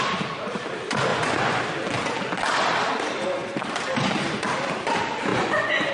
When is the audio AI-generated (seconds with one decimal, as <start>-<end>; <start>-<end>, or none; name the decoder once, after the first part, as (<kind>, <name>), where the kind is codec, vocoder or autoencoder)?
1.1-1.6 (vocoder, Vocos); 5.3-5.9